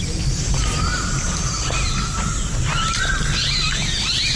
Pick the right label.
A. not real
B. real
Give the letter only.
B